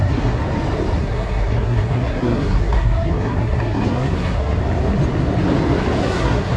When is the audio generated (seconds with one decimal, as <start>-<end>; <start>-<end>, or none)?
0.0-0.4; 1.0-4.6; 6.0-6.6